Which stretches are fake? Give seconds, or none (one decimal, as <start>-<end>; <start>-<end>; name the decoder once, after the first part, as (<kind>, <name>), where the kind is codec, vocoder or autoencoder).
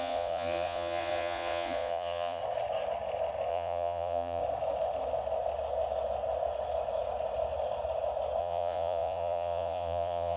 0.0-2.4 (vocoder, Vocos); 3.5-4.4; 8.4-10.4